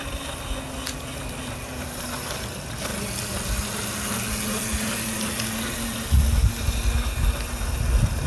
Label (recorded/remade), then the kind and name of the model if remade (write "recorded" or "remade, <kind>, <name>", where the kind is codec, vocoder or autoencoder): recorded